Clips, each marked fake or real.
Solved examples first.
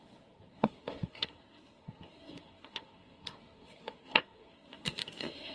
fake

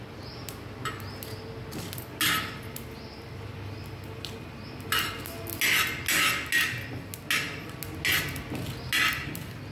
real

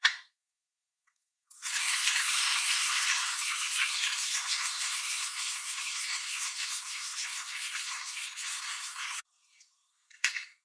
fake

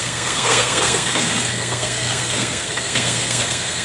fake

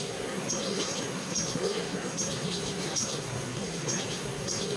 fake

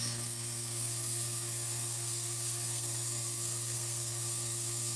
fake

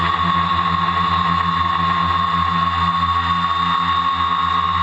real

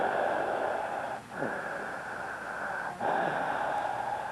real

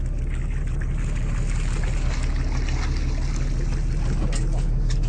real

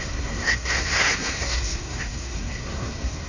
fake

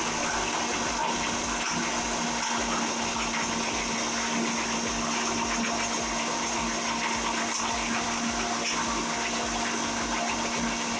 real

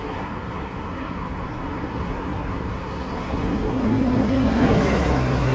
fake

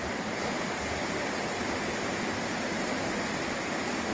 real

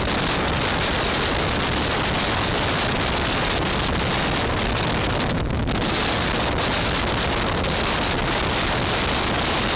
real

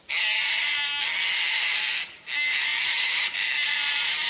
real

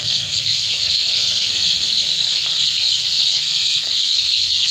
fake